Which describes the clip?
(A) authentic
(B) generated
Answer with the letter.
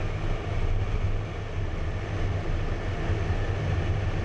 A